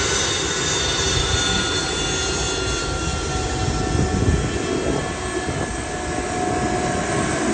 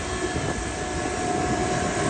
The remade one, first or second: second